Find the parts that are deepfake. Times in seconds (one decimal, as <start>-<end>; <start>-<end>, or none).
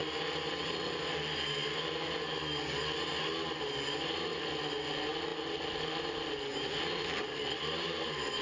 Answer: none